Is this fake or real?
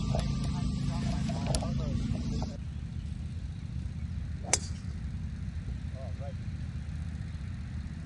real